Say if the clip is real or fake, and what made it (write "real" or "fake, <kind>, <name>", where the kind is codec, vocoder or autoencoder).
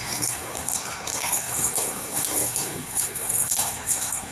fake, codec, SNAC